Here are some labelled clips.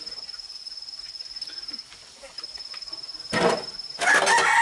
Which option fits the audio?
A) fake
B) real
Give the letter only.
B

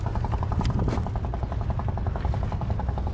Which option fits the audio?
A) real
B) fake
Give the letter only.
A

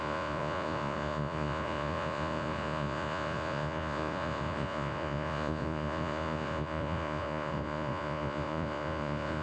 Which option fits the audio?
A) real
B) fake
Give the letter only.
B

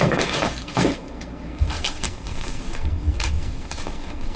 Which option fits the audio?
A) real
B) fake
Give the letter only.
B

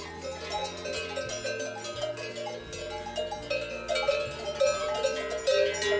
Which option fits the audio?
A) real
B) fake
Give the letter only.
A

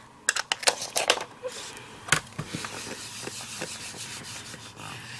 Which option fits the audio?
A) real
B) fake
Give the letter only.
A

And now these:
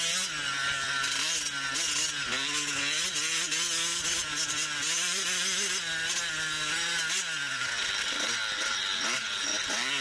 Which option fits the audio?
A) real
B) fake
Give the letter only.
A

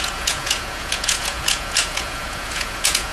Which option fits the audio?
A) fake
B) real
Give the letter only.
A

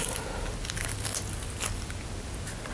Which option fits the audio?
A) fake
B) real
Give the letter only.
B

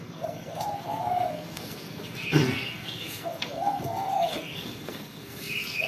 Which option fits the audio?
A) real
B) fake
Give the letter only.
B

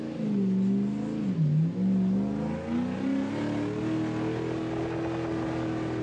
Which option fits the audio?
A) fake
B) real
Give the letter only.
B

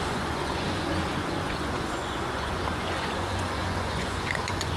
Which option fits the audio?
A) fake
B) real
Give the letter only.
A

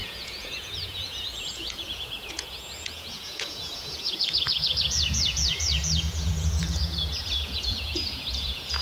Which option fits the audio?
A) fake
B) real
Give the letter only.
A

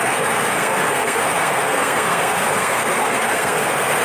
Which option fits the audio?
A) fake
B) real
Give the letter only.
A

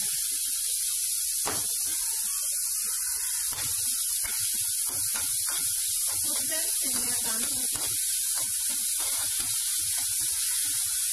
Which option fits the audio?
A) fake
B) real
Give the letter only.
B